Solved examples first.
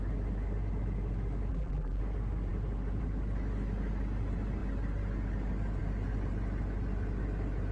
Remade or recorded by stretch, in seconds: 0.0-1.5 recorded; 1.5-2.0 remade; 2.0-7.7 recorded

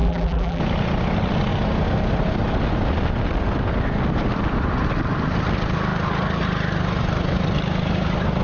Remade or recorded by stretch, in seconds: 0.0-0.6 remade; 0.6-8.4 recorded

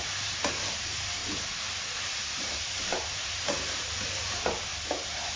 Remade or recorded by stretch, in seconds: 0.0-1.2 remade; 1.2-2.0 recorded; 2.0-5.4 remade